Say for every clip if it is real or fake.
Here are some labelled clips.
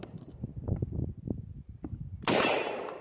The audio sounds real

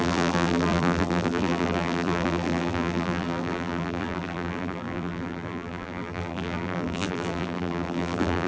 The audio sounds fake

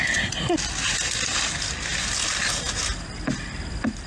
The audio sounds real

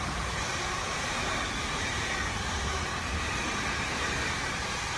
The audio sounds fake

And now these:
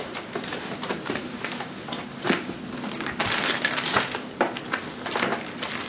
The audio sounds real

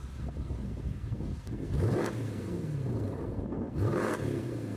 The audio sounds fake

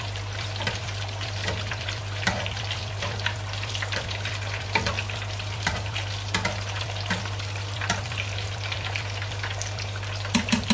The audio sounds fake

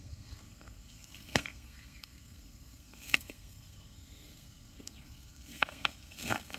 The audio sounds fake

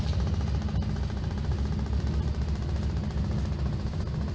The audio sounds real